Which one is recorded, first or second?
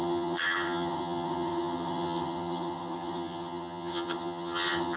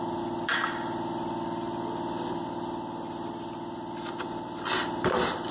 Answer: second